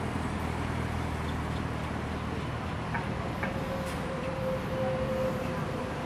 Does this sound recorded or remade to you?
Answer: recorded